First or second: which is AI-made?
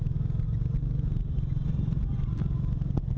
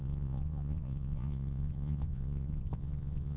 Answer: second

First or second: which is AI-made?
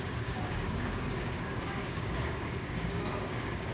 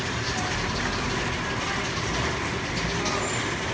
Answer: first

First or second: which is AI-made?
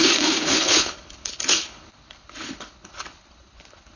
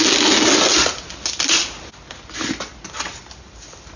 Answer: first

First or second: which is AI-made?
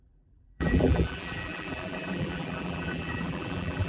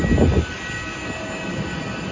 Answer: first